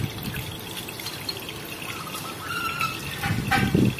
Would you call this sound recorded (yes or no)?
yes